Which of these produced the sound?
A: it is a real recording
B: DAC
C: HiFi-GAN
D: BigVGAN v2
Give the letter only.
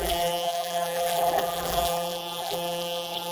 D